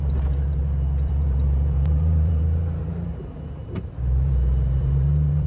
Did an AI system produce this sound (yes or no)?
yes